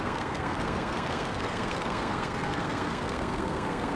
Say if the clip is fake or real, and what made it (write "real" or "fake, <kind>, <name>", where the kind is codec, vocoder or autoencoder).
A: fake, codec, SNAC